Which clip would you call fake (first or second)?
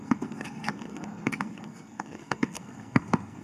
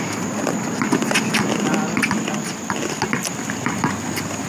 first